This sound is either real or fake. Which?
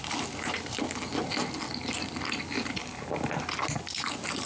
real